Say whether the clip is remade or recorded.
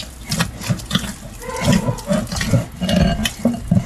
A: recorded